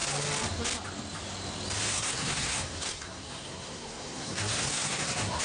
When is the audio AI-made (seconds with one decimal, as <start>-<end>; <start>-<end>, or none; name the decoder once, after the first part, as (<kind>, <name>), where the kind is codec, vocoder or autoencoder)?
1.9-5.4 (codec, SNAC)